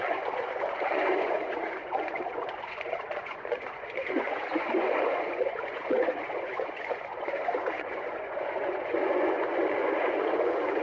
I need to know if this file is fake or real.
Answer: fake